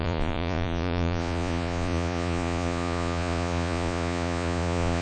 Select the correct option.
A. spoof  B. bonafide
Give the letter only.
A